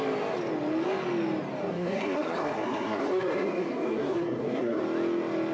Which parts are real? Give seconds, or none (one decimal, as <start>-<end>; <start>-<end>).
0.0-1.7; 4.8-5.5